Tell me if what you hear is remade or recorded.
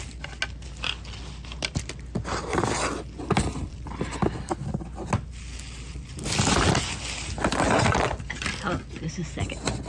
recorded